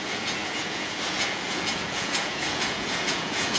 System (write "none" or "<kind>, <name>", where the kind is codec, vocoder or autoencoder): vocoder, Vocos